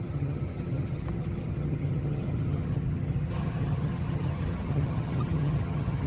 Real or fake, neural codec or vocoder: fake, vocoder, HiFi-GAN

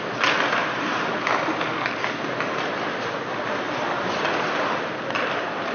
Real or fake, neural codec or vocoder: real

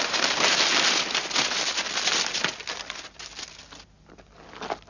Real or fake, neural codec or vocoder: real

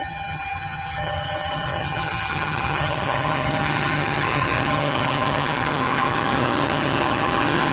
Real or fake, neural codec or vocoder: fake, vocoder, HiFi-GAN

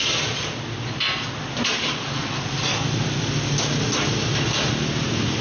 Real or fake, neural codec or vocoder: real